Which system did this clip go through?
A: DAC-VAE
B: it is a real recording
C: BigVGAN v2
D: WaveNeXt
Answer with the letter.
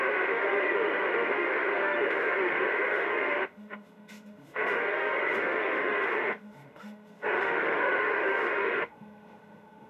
A